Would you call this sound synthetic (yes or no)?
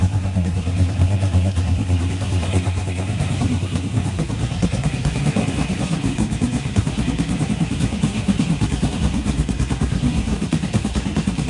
yes